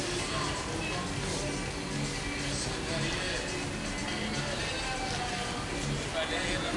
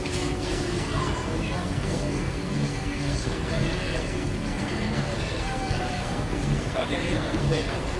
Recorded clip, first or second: first